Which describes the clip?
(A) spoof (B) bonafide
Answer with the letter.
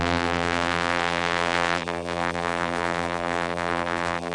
A